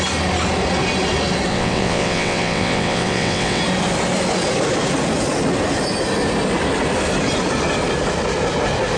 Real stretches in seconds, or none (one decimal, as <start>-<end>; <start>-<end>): 0.0-1.5; 3.6-9.0